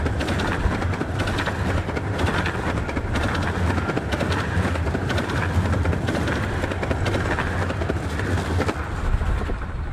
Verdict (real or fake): real